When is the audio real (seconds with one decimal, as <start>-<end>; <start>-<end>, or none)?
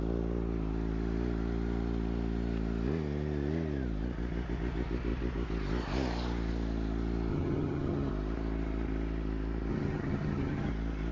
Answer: 0.0-7.3; 8.1-9.7; 10.7-11.1